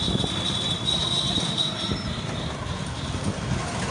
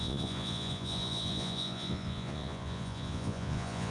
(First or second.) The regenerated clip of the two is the second